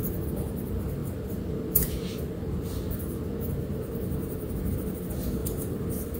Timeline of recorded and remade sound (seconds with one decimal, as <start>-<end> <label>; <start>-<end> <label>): 0.0-6.2 recorded